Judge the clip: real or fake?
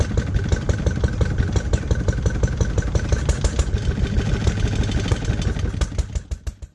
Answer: real